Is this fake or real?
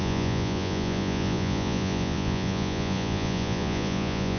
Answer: fake